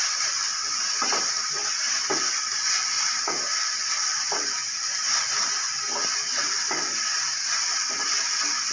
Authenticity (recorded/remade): recorded